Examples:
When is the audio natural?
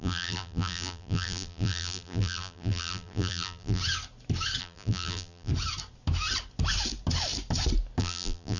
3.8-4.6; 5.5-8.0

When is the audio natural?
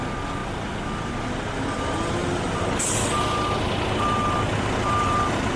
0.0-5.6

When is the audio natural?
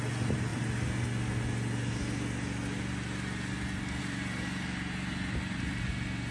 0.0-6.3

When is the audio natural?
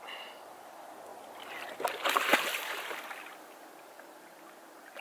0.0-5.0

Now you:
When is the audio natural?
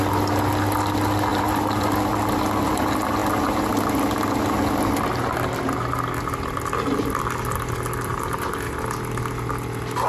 0.0-1.3; 2.4-8.1; 8.8-10.1